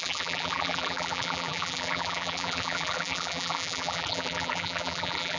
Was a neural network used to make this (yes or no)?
yes